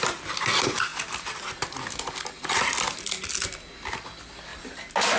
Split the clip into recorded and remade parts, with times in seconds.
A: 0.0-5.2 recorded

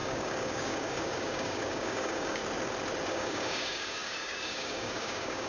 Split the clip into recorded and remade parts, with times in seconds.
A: 0.0-2.4 remade; 2.4-3.1 recorded; 3.1-5.5 remade

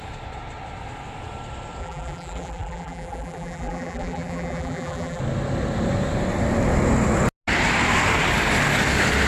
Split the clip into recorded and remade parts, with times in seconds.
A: 0.0-1.8 recorded; 1.8-5.2 remade; 5.2-9.3 recorded

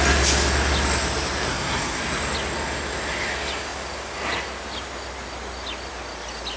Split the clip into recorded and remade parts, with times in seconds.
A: 0.0-1.5 recorded; 1.5-2.0 remade; 2.0-6.6 recorded

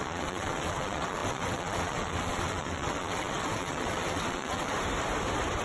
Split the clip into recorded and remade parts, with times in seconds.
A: 0.0-4.7 remade; 4.7-5.6 recorded

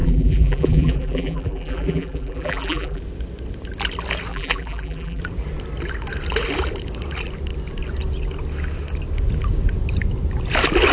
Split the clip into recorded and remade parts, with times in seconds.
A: 0.0-3.0 remade; 3.0-4.3 recorded; 4.3-5.2 remade; 5.2-10.9 recorded

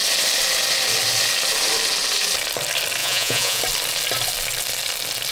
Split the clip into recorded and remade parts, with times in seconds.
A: 0.0-3.0 recorded; 3.0-3.6 remade; 3.6-5.3 recorded

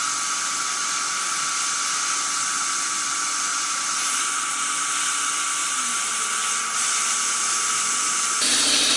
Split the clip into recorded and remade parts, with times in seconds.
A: 0.0-3.5 recorded; 3.5-4.2 remade; 4.2-5.6 recorded; 5.6-6.1 remade; 6.1-6.6 recorded; 6.6-7.4 remade; 7.4-9.0 recorded